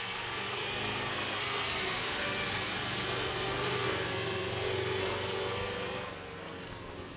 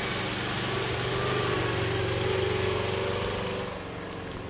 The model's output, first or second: first